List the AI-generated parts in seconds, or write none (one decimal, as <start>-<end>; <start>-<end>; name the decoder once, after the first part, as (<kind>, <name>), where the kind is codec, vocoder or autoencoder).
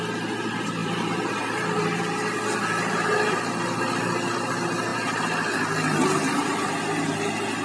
0.8-2.0 (vocoder, BigVGAN v2)